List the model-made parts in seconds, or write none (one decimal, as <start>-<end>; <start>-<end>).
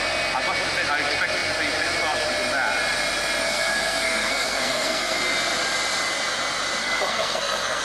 3.4-5.2; 6.8-7.8